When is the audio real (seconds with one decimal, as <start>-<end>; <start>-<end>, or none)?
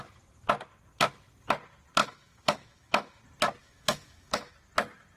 0.0-2.0; 3.2-3.6; 4.5-5.2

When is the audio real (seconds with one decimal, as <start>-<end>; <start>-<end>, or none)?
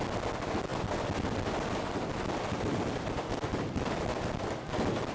0.0-5.1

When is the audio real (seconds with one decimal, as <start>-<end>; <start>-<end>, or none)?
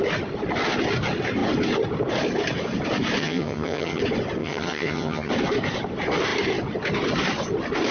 0.0-3.2; 4.0-4.4; 5.3-7.9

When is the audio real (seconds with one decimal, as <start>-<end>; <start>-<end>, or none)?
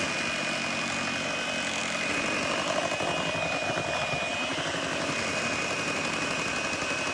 0.0-1.8; 2.8-4.3; 6.5-7.1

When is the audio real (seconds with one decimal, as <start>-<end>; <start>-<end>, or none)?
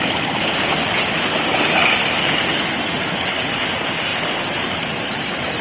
0.0-5.6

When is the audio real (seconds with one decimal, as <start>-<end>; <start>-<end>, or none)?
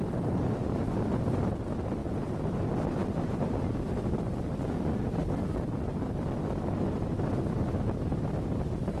0.0-2.0; 2.6-9.0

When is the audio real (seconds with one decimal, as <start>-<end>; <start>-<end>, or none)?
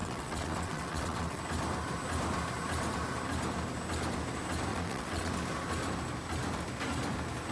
1.4-4.7; 5.3-7.5